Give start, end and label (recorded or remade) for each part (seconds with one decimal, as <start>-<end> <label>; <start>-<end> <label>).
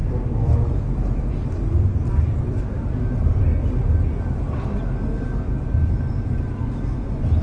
0.0-7.4 recorded